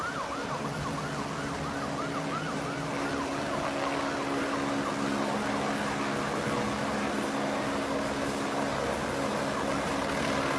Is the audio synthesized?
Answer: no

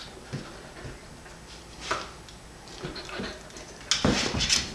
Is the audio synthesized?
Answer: no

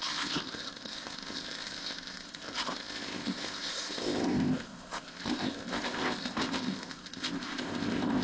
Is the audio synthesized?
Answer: yes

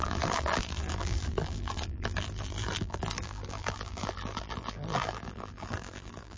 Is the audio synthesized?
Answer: yes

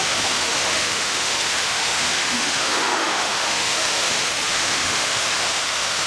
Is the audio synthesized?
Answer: yes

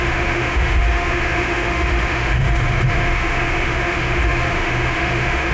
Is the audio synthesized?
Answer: yes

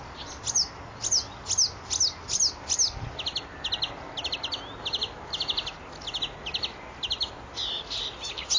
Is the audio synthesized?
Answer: no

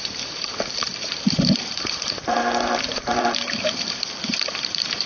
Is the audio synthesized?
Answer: yes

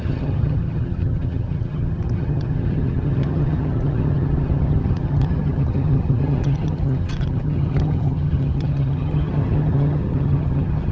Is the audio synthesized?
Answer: yes